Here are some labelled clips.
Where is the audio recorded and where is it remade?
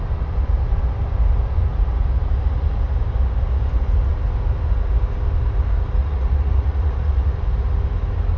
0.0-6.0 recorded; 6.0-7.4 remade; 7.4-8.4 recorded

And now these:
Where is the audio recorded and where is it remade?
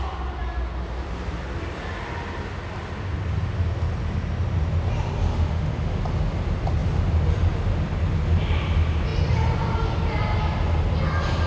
0.0-5.3 recorded; 5.3-6.0 remade; 6.0-11.5 recorded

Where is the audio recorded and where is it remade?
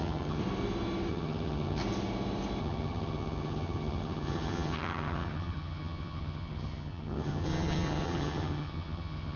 0.0-0.4 remade; 0.4-1.1 recorded; 1.1-1.8 remade; 1.8-2.6 recorded; 2.6-9.4 remade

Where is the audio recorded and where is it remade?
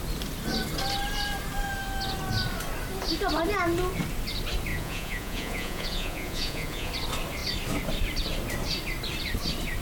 0.0-4.7 recorded; 4.7-6.9 remade; 6.9-9.8 recorded